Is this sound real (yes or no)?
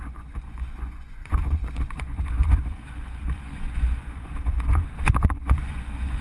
no